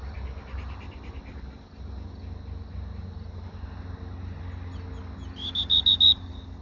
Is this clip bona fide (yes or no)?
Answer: yes